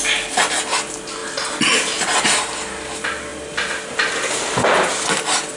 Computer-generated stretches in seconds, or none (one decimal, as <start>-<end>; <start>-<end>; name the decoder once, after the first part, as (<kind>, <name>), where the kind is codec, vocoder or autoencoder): none

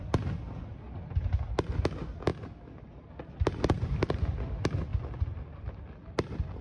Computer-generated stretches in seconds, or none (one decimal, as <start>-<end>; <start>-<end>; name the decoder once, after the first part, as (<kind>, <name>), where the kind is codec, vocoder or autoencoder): 4.9-5.8 (vocoder, BigVGAN v2)